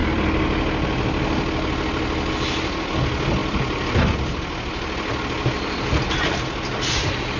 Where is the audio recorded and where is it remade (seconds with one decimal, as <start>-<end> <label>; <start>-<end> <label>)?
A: 0.0-7.4 recorded